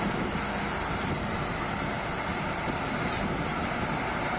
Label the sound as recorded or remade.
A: recorded